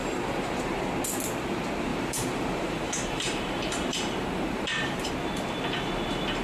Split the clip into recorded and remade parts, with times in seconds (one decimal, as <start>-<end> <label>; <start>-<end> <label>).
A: 0.0-0.9 remade; 0.9-1.9 recorded; 1.9-5.1 remade; 5.1-6.4 recorded